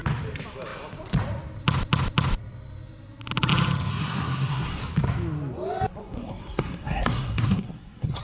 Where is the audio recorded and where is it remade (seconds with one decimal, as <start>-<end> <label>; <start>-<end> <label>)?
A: 0.0-3.9 recorded; 3.9-4.8 remade; 4.8-6.0 recorded; 6.0-8.2 remade

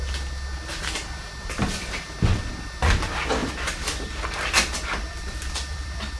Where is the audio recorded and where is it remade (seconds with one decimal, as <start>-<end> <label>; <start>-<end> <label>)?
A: 0.0-3.4 recorded; 3.4-6.2 remade